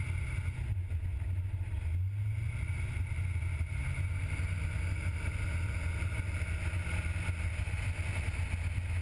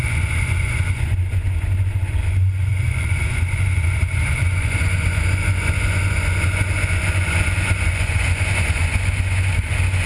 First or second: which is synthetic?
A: second